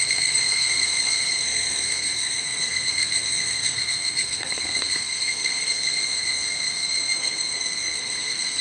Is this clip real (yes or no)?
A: no